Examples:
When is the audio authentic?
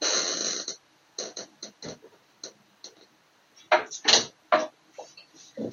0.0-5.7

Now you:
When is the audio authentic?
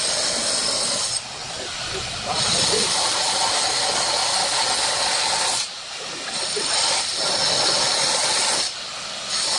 0.0-9.6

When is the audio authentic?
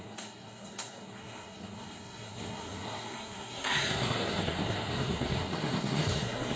none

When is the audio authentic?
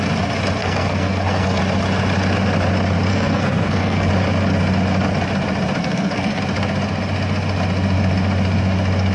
0.0-0.6; 1.6-3.1; 4.1-5.8; 6.4-9.1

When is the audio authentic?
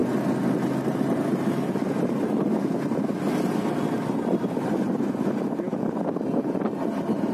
0.0-7.3